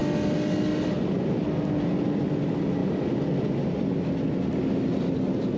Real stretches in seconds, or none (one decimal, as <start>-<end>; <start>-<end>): 0.0-5.6